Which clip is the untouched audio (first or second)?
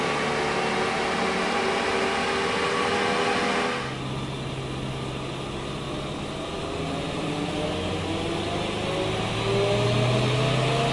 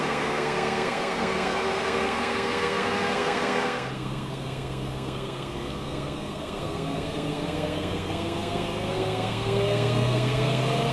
first